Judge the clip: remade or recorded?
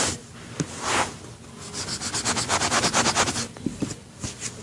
recorded